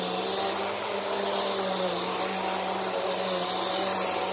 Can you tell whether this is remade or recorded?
recorded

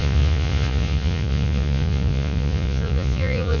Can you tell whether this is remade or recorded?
remade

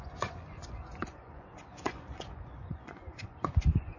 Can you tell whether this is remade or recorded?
remade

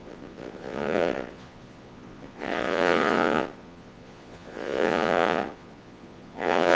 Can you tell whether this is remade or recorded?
remade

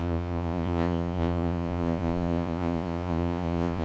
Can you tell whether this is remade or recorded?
remade